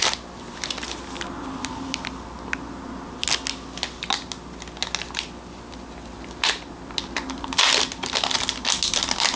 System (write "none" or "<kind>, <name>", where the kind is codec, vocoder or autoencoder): none